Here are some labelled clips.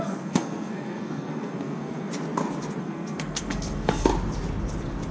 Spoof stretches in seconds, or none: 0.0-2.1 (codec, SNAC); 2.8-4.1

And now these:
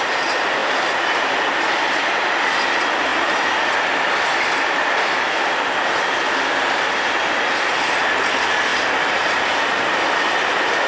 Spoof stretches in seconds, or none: none

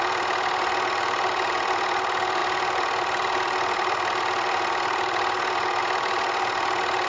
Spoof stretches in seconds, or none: none

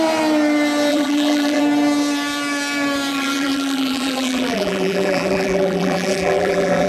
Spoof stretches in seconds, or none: 0.9-1.6 (vocoder, BigVGAN v2); 3.1-6.9

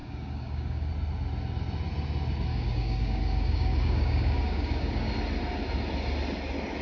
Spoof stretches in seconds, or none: 0.0-0.9 (codec, DAC); 2.5-5.1

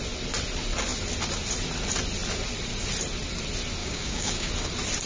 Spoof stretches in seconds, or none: 3.8-4.5 (codec, DAC)